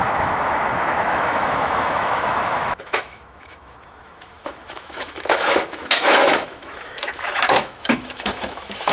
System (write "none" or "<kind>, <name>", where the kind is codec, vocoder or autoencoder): autoencoder, DAC-VAE